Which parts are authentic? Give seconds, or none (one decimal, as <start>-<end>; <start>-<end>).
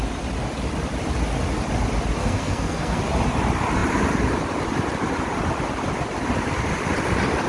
0.0-2.2; 3.0-7.5